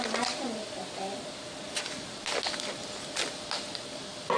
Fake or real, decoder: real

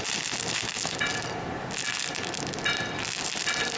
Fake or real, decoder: real